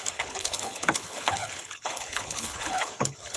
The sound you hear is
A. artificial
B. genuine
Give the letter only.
A